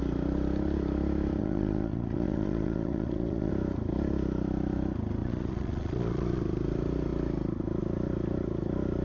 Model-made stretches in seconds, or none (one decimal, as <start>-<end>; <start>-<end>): 1.4-3.5; 5.2-6.4